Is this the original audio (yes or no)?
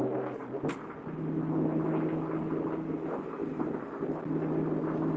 yes